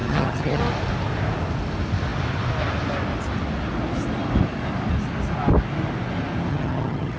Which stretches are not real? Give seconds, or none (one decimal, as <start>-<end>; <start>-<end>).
0.0-0.6; 6.5-7.2